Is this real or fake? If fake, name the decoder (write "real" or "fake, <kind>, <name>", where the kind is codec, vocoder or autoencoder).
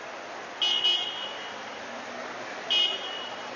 real